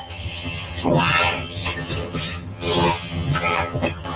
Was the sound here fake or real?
fake